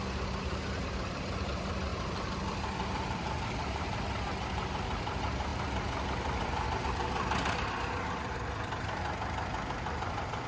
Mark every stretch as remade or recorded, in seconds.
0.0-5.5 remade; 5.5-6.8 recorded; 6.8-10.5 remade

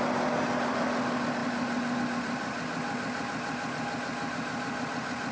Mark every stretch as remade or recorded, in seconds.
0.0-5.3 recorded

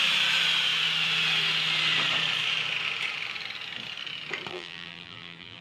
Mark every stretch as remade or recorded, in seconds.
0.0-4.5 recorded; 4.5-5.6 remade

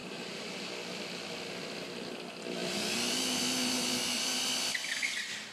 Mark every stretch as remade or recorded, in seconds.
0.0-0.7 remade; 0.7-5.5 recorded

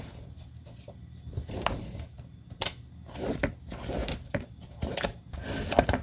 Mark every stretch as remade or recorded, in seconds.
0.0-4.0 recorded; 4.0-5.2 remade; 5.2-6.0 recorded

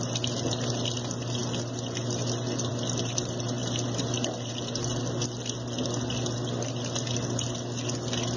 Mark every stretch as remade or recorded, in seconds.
0.0-3.6 recorded; 3.6-4.5 remade; 4.5-8.4 recorded